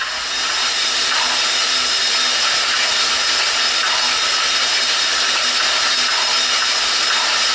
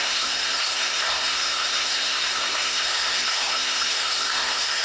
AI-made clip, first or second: second